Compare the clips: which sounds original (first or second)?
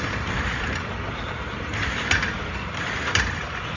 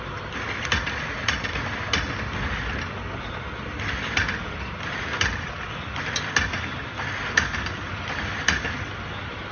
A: second